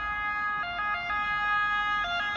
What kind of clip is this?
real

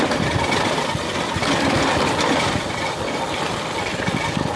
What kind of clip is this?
fake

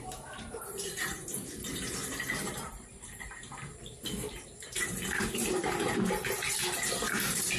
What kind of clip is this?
fake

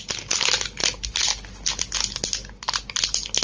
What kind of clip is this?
real